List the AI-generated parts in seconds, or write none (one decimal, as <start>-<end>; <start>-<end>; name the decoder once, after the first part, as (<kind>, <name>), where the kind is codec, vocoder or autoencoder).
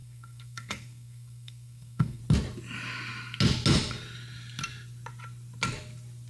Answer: 0.0-2.2 (codec, SNAC)